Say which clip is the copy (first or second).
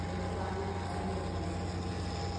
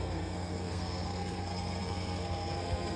second